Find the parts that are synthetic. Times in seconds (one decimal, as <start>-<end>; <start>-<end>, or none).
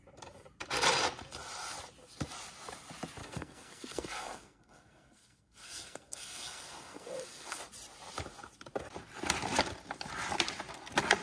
3.2-7.6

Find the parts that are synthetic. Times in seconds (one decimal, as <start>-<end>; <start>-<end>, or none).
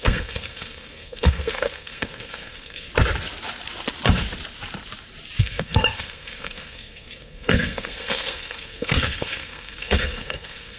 0.0-2.9; 5.4-10.8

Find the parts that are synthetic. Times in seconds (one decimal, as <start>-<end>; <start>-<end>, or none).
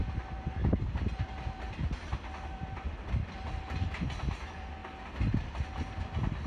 none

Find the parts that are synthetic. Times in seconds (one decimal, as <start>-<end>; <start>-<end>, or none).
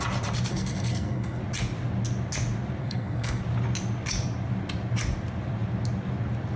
0.5-1.4; 2.8-3.4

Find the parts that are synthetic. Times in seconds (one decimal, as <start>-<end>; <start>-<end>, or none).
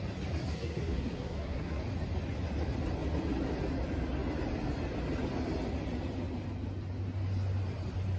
0.5-1.8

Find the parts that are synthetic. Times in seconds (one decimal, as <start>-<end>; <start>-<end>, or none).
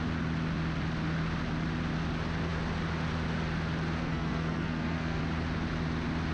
4.0-5.2